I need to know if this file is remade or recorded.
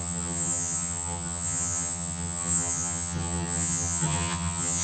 remade